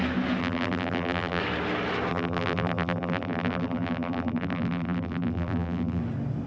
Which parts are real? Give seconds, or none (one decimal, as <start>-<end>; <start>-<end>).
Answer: 0.0-0.4; 1.4-2.1; 6.0-6.5